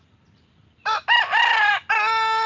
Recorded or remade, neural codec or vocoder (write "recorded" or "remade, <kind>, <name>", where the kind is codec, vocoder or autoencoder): recorded